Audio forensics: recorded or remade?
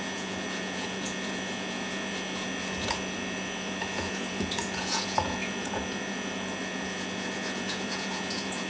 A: remade